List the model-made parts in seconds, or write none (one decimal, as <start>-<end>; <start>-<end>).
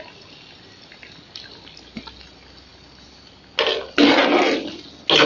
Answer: none